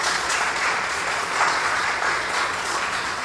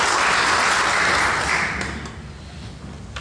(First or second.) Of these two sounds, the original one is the second